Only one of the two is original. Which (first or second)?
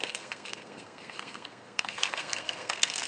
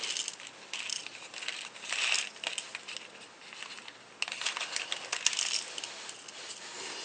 second